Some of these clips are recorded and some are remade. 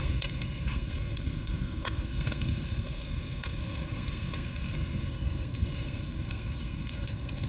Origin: remade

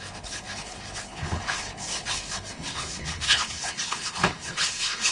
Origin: remade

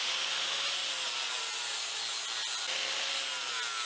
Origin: recorded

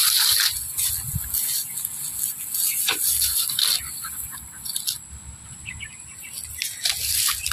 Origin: recorded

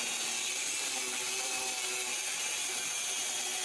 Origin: recorded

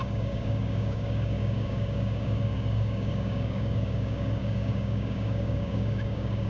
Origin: remade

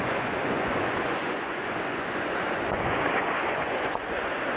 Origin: remade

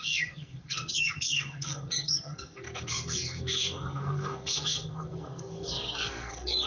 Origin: remade